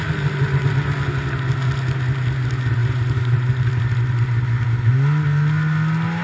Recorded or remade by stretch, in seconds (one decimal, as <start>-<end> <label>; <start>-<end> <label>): 0.0-2.8 recorded; 2.8-3.6 remade; 3.6-6.2 recorded